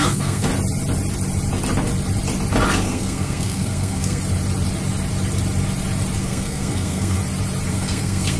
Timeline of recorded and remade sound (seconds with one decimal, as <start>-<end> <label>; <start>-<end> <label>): 0.0-0.5 remade; 0.5-2.7 recorded; 2.7-4.2 remade; 4.2-6.2 recorded; 6.2-7.2 remade; 7.2-7.7 recorded; 7.7-8.4 remade